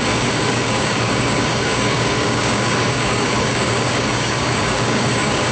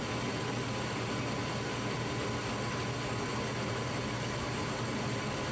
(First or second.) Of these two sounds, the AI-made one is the first